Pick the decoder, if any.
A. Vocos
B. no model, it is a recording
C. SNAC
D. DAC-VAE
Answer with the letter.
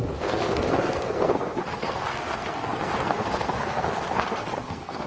C